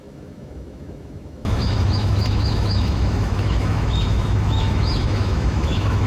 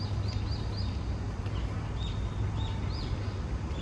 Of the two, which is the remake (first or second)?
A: first